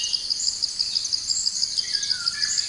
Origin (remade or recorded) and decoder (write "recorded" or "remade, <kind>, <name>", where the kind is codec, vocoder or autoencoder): recorded